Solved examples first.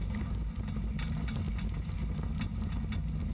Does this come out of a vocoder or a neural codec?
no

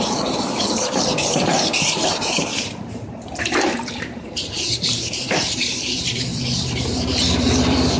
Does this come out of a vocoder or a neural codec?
yes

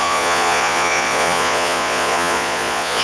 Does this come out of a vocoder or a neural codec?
yes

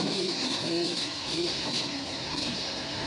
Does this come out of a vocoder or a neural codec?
yes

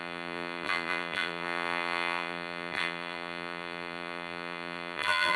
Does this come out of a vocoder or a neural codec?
yes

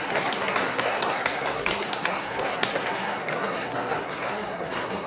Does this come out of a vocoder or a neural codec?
yes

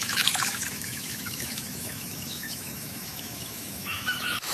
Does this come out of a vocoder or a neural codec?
yes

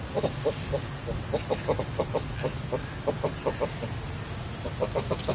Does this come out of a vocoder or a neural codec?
no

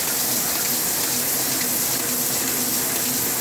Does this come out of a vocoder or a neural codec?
no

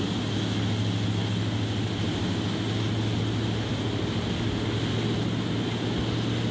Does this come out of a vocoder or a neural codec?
no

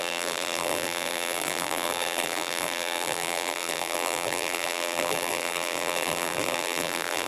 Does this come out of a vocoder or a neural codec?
yes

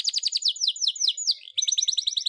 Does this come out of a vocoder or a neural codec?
no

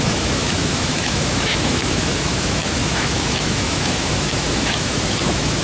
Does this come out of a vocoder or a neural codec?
yes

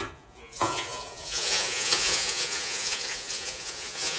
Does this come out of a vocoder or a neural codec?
yes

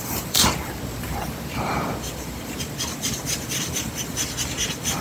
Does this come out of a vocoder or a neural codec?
yes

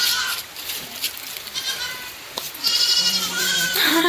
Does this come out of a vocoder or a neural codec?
yes